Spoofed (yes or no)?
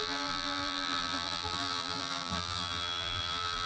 yes